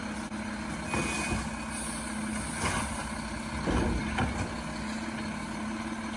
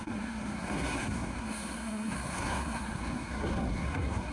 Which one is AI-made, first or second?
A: second